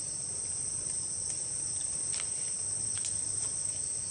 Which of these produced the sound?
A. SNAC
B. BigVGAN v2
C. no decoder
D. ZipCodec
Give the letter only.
B